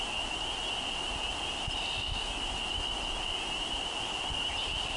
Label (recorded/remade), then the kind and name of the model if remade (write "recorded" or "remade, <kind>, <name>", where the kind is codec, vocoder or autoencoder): recorded